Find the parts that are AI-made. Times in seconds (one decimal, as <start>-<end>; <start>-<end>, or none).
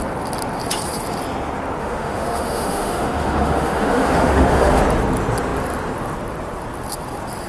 1.8-4.8